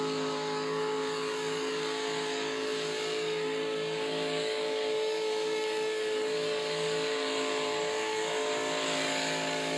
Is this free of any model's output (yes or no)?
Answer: no